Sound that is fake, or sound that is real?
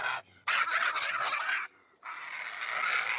real